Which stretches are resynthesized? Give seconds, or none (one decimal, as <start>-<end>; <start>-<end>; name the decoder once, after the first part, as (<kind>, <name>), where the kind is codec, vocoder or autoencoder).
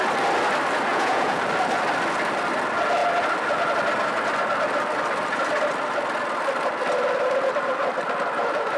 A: 0.9-1.4 (vocoder, Vocos)